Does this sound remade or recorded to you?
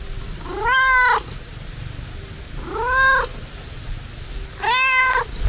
recorded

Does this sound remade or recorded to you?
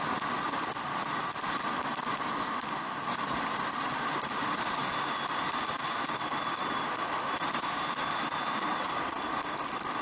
recorded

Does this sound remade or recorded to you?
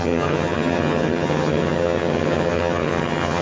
remade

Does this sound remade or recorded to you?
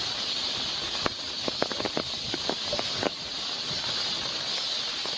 recorded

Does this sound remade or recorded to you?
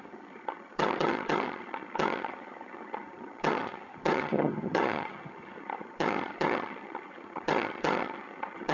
remade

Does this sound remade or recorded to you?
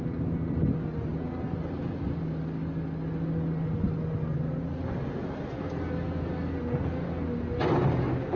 recorded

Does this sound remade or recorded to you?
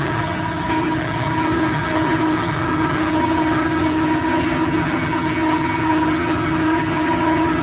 remade